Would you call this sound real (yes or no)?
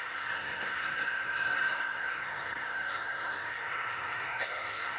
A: no